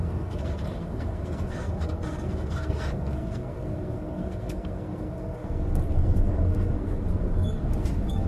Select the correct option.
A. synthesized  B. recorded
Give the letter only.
A